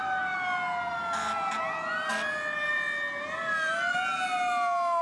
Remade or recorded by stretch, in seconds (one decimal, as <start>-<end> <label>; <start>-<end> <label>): 0.0-5.0 recorded